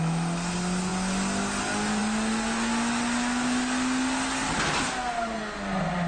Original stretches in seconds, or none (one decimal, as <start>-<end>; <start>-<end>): 0.0-6.1